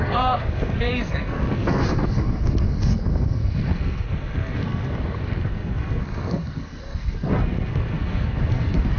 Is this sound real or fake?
fake